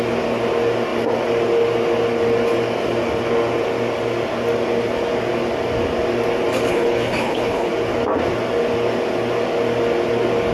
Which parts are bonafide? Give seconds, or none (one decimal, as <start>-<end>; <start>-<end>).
0.0-6.7; 7.7-10.5